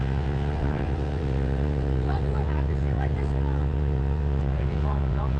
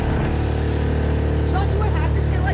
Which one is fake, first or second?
first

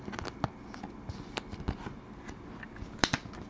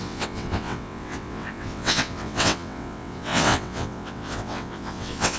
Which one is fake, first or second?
second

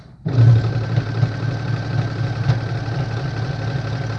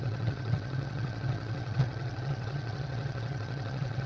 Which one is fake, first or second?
second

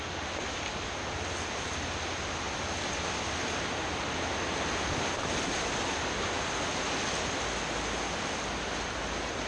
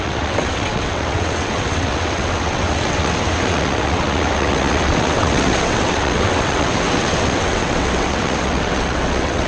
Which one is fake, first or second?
second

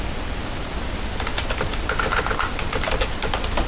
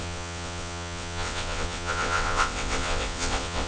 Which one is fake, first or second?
second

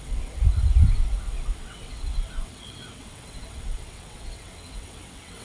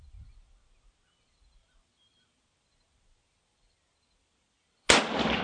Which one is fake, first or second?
first